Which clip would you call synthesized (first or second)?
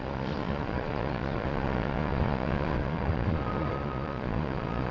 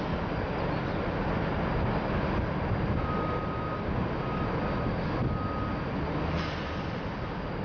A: first